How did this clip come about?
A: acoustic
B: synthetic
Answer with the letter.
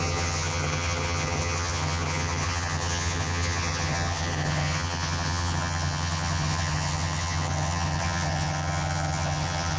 B